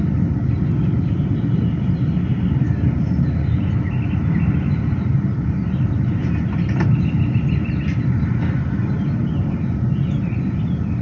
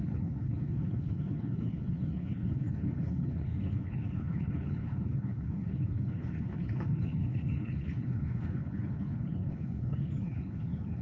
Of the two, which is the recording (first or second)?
first